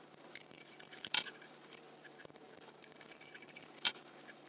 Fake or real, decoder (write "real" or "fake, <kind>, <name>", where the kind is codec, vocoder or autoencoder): fake, vocoder, BigVGAN v2